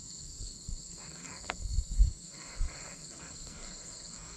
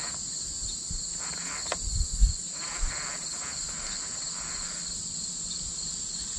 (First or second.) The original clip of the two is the second